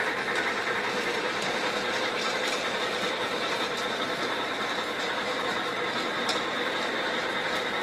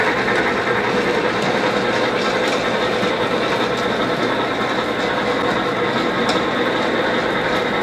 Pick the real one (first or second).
second